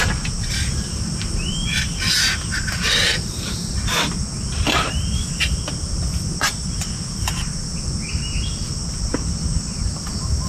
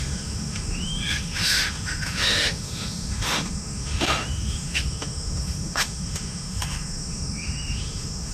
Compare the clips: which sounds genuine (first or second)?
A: first